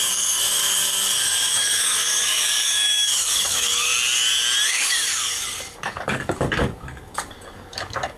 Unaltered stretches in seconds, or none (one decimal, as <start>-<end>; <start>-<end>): 3.9-4.7